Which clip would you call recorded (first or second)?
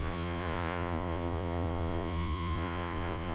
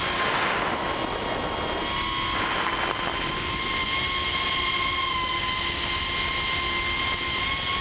second